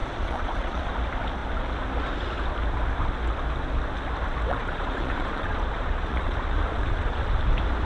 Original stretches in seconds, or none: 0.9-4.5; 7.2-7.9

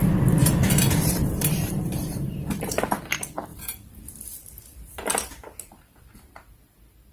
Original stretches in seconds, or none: 2.8-3.5; 4.0-7.1

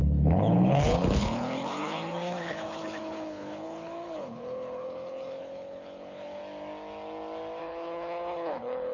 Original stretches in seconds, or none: 6.4-7.6

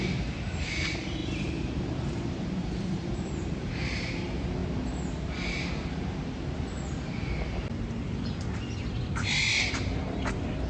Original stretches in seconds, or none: 0.0-1.2; 3.7-10.7

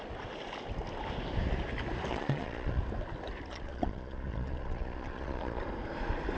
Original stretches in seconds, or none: 0.0-2.1; 2.8-3.5; 5.6-6.4